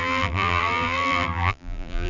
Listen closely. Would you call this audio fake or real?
fake